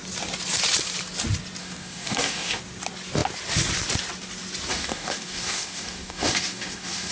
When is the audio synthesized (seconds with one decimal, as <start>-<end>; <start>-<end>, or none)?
1.6-2.6; 4.7-7.1